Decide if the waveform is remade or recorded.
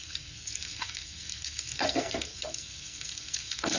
remade